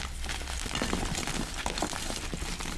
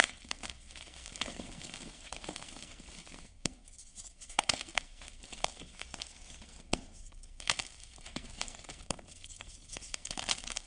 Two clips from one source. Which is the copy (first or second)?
second